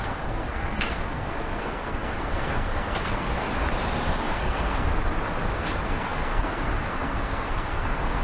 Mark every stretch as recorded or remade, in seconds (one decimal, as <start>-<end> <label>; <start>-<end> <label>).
0.0-3.4 remade; 3.4-4.2 recorded; 4.2-4.9 remade; 4.9-5.5 recorded; 5.5-8.2 remade